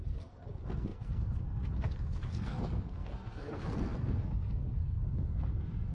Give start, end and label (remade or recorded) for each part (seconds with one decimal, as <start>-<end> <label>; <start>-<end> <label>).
0.0-5.9 remade